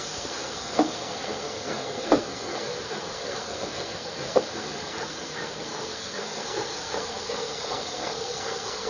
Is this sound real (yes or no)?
no